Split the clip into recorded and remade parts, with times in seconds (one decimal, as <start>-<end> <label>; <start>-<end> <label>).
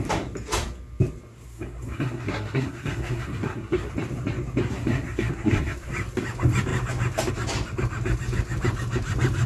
0.0-1.3 recorded; 1.3-3.9 remade; 3.9-4.6 recorded; 4.6-5.9 remade; 5.9-9.5 recorded